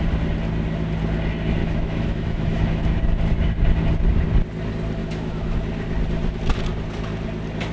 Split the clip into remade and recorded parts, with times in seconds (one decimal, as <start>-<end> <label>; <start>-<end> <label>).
0.0-1.6 recorded; 1.6-2.8 remade; 2.8-5.0 recorded; 5.0-5.6 remade; 5.6-7.7 recorded

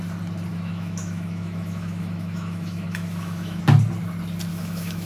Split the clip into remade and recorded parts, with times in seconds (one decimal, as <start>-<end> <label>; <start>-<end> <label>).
0.0-0.5 recorded; 0.5-3.6 remade; 3.6-4.5 recorded; 4.5-5.1 remade